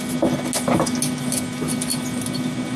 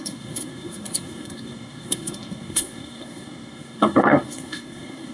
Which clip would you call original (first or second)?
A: first